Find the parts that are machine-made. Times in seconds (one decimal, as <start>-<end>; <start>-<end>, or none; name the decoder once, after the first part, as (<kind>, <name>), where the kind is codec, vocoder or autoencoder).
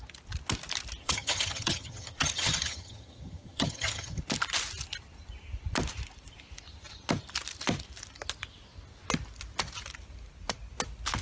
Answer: 1.0-4.2 (vocoder, HiFi-GAN)